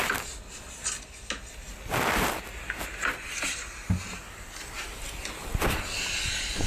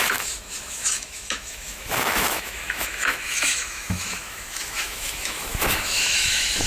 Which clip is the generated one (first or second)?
second